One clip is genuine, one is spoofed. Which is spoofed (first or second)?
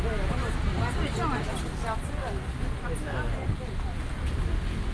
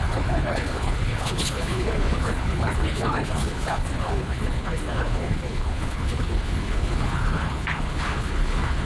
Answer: second